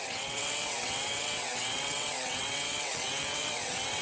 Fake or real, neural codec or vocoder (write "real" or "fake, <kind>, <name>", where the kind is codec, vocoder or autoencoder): fake, vocoder, WaveNeXt